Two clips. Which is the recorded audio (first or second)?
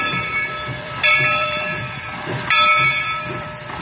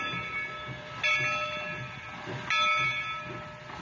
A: second